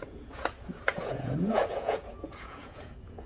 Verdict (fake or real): fake